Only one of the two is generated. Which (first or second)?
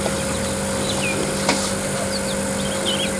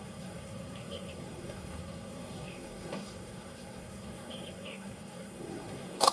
second